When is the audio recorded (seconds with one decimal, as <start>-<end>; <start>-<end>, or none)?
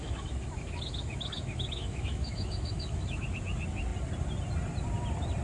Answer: 3.2-5.4